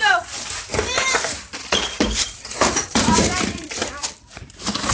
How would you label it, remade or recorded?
remade